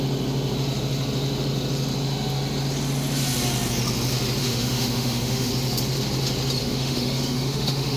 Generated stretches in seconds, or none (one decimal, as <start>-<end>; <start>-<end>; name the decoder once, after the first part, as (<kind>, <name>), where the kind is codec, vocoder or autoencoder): 4.4-5.5 (autoencoder, DAC-VAE); 6.6-8.0